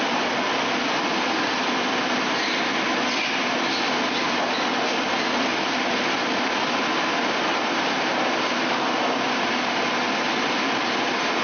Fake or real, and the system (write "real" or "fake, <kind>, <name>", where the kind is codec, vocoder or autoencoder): real